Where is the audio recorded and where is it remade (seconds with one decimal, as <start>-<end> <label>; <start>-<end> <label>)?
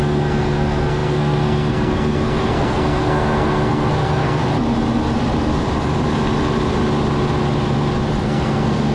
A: 0.0-4.4 remade; 4.4-8.2 recorded; 8.2-8.9 remade